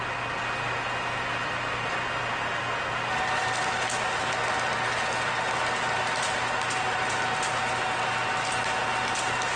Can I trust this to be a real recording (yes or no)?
yes